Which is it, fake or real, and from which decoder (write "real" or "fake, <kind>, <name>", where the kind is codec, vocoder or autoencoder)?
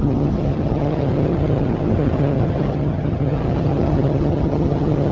fake, vocoder, HiFi-GAN